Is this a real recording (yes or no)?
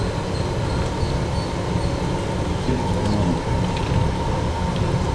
yes